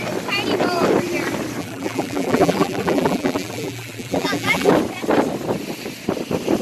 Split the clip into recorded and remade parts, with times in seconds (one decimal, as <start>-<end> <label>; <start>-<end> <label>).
0.0-1.6 recorded; 1.6-4.7 remade; 4.7-6.6 recorded